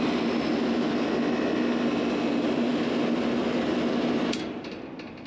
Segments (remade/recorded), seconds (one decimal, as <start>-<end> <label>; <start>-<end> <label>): 0.0-5.3 recorded